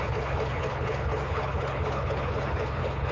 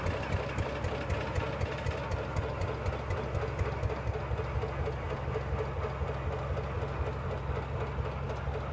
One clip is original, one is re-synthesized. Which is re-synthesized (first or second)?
first